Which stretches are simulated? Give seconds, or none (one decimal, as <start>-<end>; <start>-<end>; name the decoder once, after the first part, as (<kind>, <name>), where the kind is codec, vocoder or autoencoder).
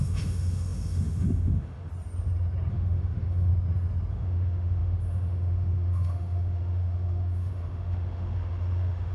0.0-1.9 (autoencoder, DAC-VAE); 2.7-3.5; 4.1-9.1